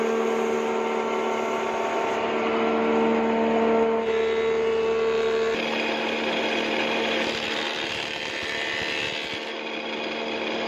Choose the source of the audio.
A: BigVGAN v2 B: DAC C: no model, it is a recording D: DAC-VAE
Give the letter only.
C